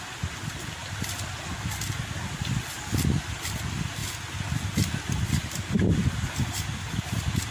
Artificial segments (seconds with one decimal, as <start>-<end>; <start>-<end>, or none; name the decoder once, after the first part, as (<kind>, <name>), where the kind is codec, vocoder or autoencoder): none